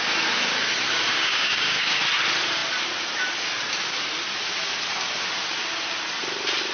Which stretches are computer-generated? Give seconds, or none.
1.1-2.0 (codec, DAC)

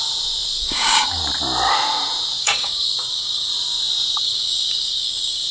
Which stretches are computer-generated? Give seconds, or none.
0.6-1.2 (codec, DAC); 2.4-3.5; 4.2-5.5

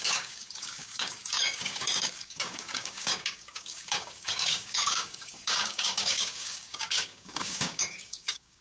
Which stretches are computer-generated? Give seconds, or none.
0.0-8.6 (codec, DAC)

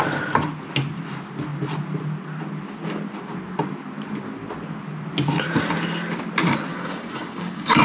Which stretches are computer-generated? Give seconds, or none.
6.7-7.8 (codec, DAC)

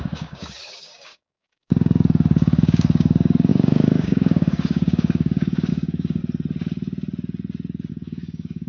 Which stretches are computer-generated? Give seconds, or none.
0.0-6.2 (codec, DAC); 7.9-8.7

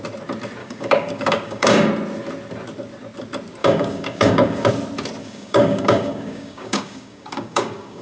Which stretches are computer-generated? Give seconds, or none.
0.6-1.9 (codec, DAC); 3.6-4.7; 5.2-8.0